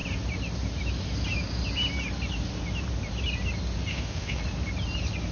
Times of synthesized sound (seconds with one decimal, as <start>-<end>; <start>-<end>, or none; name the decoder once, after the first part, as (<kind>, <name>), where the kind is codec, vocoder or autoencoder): 3.9-4.4 (autoencoder, DAC-VAE)